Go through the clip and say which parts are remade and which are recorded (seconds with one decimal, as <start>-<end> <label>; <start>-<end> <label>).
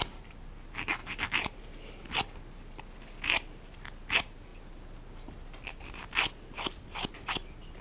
0.0-7.8 recorded